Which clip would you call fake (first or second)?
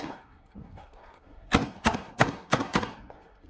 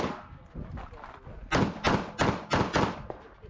first